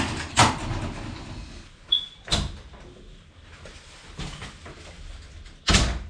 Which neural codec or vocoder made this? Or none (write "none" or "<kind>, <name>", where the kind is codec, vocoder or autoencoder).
none